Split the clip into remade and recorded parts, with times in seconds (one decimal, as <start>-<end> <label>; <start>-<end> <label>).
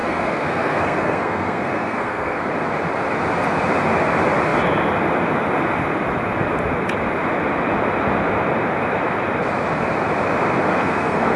0.0-2.4 remade; 2.4-10.7 recorded; 10.7-11.4 remade